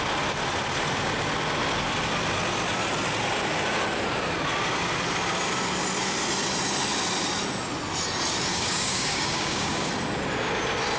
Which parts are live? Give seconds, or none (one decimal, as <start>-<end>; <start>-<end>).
0.0-8.5; 9.9-11.0